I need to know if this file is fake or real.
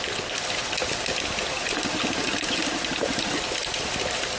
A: real